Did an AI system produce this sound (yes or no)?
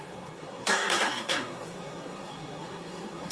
yes